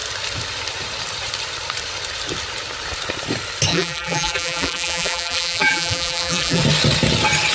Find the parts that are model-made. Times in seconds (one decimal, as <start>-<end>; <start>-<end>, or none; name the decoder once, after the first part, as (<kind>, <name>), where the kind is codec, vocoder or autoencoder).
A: 3.7-6.6 (vocoder, BigVGAN v2)